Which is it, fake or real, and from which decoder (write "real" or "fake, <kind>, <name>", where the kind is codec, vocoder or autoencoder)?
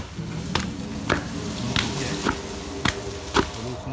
real